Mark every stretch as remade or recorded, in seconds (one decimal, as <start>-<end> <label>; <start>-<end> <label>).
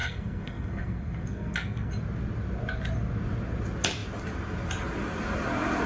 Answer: 0.0-1.9 remade; 1.9-5.9 recorded